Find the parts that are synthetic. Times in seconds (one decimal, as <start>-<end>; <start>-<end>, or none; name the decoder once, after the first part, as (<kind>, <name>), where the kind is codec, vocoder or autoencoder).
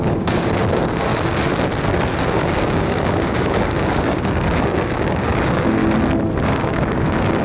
0.0-1.1 (codec, DAC); 2.2-5.8; 6.4-7.4